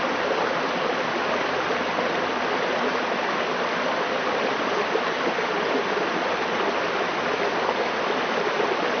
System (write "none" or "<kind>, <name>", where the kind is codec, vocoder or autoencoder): none